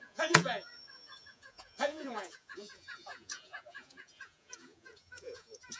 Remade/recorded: remade